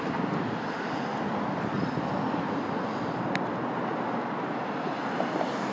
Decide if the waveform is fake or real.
real